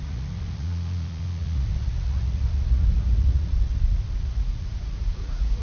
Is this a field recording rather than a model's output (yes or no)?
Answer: no